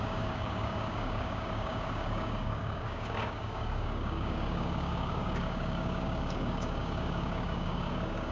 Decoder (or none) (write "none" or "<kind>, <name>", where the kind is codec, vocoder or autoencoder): codec, DAC